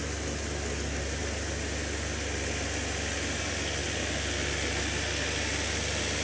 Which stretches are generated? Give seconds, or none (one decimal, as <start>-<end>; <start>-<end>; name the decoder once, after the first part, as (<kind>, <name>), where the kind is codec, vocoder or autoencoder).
none